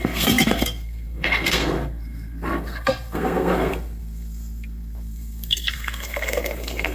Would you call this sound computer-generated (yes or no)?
yes